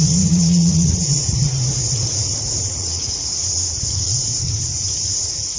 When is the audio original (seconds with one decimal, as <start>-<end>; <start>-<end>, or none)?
1.4-2.0

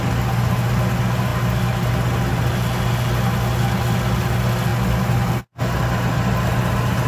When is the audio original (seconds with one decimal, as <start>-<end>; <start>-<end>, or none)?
0.0-7.1